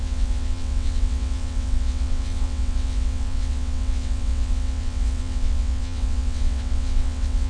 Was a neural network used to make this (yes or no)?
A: yes